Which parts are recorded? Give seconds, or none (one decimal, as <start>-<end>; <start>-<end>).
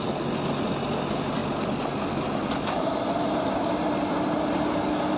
0.0-5.2